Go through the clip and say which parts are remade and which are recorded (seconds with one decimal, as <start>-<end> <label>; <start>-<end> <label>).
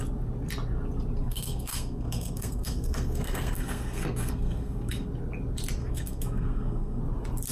0.0-1.2 recorded; 1.2-5.1 remade; 5.1-5.8 recorded; 5.8-7.0 remade; 7.0-7.5 recorded